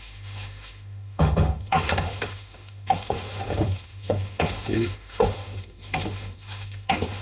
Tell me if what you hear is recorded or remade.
remade